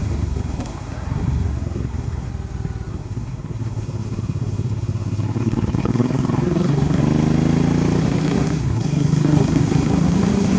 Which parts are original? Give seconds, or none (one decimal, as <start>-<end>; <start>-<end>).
2.3-2.9; 7.0-8.0